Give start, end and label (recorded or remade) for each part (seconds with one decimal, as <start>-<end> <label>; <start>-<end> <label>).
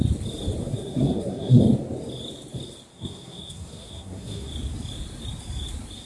0.0-0.6 recorded; 0.6-1.6 remade; 1.6-2.9 recorded; 2.9-4.5 remade; 4.5-6.1 recorded